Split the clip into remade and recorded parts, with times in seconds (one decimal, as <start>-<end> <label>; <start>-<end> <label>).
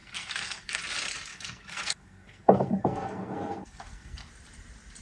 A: 0.0-0.8 remade; 0.8-1.3 recorded; 1.3-4.3 remade; 4.3-5.0 recorded